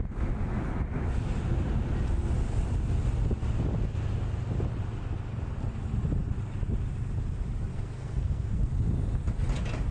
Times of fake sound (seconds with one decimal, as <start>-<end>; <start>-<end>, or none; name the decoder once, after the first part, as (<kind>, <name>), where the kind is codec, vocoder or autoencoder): 7.7-8.7 (codec, SNAC)